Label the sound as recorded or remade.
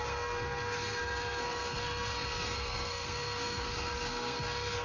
remade